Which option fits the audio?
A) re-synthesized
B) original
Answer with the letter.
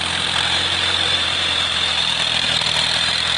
A